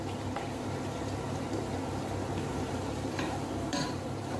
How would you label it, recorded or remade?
remade